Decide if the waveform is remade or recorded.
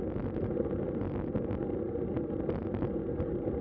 recorded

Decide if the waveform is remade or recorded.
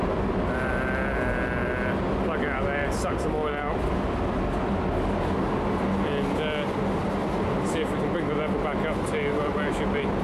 recorded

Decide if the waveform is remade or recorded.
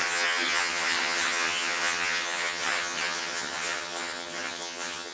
remade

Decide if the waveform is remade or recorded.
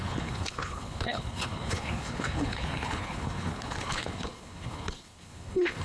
remade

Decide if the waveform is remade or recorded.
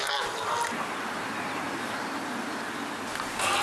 recorded